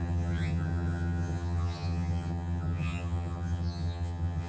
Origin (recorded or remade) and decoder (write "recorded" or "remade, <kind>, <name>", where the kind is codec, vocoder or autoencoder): remade, vocoder, HiFi-GAN